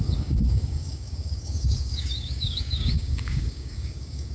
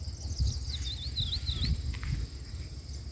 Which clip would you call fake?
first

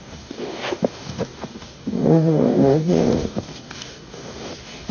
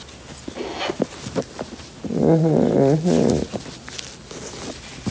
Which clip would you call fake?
first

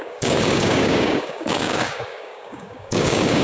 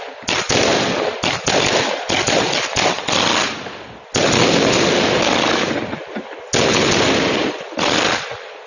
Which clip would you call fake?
first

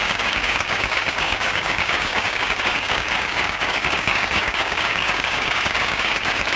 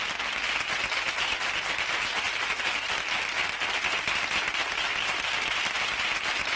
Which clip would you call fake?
first